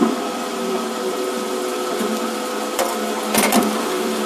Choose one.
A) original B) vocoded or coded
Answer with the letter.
B